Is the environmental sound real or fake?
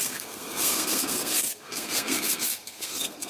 fake